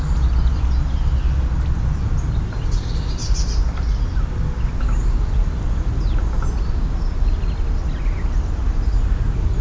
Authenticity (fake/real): real